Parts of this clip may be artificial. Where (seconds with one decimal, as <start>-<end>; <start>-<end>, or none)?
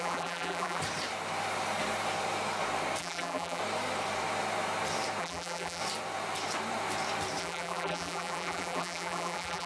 0.0-0.8; 3.0-3.6; 5.2-5.8; 7.4-9.7